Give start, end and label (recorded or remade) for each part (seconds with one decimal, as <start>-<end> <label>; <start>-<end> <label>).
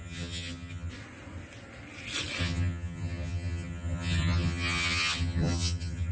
0.0-0.9 remade; 0.9-2.4 recorded; 2.4-6.1 remade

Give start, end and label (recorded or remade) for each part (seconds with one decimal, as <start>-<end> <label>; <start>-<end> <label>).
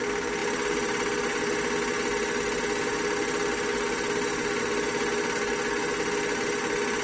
0.0-7.0 recorded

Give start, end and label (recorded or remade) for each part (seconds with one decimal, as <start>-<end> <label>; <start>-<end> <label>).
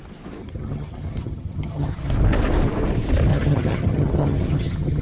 0.0-0.4 recorded; 0.4-2.1 remade; 2.1-3.3 recorded; 3.3-5.0 remade